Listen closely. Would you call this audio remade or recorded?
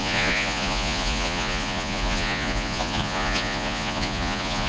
remade